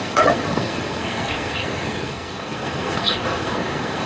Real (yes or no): no